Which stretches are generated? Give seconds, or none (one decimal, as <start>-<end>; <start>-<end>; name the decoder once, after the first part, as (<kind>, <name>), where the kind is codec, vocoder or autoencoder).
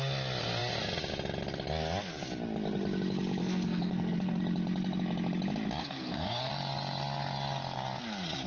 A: 3.4-4.4 (codec, SNAC); 5.8-6.5